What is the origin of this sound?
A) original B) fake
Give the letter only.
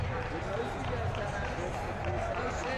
A